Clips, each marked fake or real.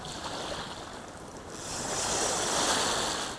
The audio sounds real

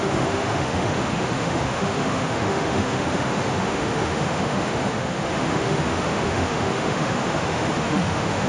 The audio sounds fake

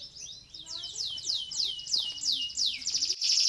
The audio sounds real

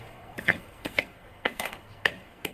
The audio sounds fake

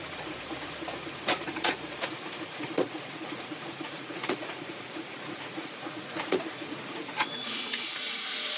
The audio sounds fake